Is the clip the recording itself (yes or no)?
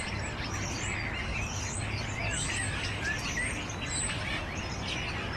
yes